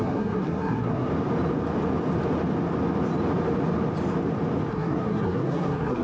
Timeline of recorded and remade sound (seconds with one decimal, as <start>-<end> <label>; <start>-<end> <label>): 0.0-1.1 remade; 1.1-4.7 recorded; 4.7-6.0 remade